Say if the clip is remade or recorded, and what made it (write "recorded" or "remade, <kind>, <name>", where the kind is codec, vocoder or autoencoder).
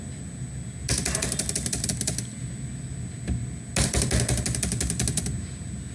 recorded